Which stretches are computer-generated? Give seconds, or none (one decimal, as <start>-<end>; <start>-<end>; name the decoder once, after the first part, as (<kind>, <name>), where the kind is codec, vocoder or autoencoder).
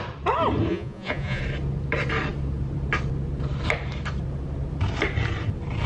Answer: 0.7-1.4 (vocoder, Vocos)